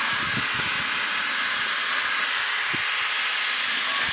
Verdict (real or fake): real